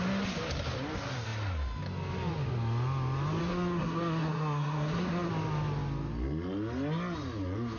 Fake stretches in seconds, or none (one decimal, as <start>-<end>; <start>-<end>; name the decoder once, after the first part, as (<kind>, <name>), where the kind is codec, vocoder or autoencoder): 3.4-5.3 (codec, SNAC)

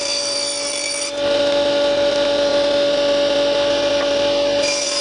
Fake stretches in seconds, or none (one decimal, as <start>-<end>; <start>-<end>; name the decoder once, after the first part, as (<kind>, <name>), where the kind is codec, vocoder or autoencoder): none

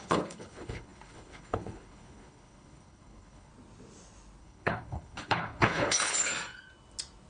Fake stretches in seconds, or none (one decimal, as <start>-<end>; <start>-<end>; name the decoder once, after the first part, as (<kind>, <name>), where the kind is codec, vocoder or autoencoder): 0.0-3.5 (codec, HILCodec); 4.4-6.3

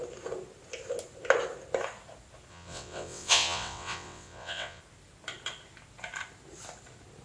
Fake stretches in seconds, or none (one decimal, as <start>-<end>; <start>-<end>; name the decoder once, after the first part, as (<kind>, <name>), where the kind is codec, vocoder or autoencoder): 2.5-4.8 (vocoder, WaveNeXt)

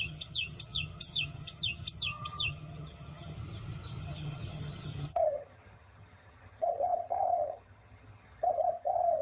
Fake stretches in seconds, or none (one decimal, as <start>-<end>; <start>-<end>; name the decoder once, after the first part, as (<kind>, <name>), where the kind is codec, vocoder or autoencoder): 0.0-3.4 (vocoder, HiFi-GAN); 4.0-9.2

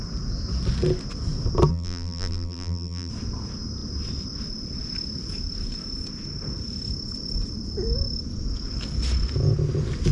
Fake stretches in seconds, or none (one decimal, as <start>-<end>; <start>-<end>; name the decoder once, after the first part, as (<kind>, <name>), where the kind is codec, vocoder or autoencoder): 1.7-3.1 (vocoder, BigVGAN v2)